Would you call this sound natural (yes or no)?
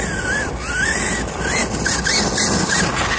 yes